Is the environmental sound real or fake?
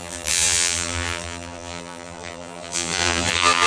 fake